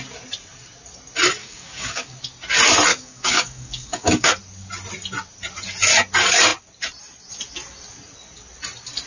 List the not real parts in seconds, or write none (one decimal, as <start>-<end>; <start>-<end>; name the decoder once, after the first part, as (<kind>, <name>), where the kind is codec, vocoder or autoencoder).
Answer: 1.4-2.2 (codec, DAC); 2.9-4.3